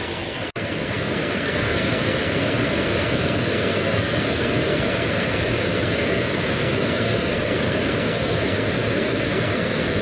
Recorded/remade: remade